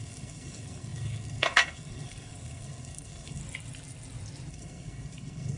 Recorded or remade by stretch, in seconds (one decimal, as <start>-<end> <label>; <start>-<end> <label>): 0.0-3.4 remade; 3.4-4.5 recorded; 4.5-5.6 remade